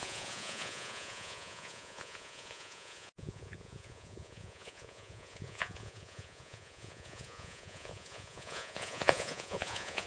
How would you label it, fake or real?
fake